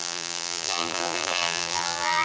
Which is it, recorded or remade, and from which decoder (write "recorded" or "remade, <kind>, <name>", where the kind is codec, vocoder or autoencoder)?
remade, vocoder, BigVGAN v2